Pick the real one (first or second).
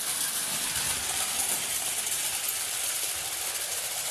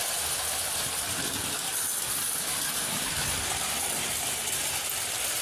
second